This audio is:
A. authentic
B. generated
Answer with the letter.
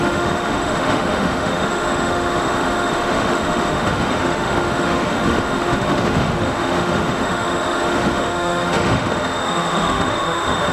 B